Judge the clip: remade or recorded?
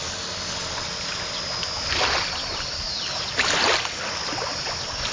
recorded